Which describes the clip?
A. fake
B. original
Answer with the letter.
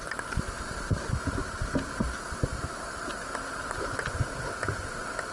B